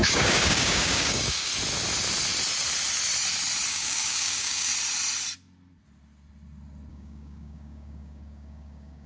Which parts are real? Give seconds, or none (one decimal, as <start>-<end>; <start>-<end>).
1.5-3.7; 4.7-6.9